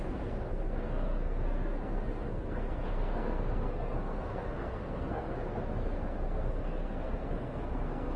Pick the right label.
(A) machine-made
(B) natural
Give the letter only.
A